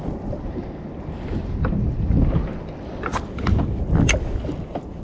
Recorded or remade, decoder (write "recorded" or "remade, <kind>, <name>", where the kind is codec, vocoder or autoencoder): recorded